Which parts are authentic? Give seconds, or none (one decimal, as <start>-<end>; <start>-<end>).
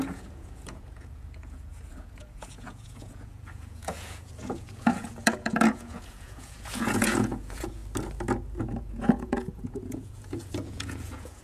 7.8-8.6